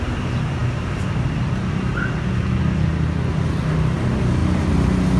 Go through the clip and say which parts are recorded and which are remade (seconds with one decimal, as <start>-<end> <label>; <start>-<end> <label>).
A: 0.0-5.2 recorded